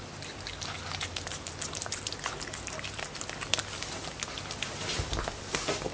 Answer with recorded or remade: recorded